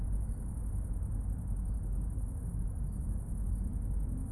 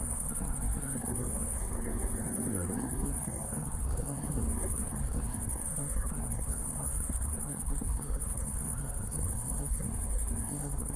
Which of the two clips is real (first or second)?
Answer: first